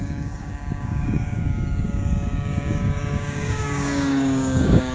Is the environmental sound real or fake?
fake